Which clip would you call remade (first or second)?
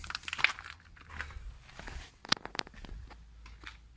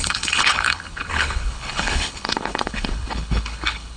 second